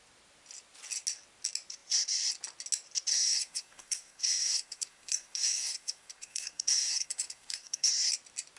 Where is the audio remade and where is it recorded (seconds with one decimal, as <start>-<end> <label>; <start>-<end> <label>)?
0.0-3.1 recorded; 3.1-7.9 remade; 7.9-8.6 recorded